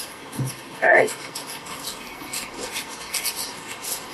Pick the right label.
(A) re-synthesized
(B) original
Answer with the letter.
A